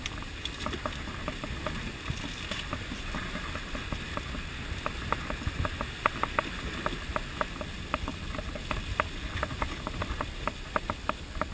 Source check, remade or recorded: recorded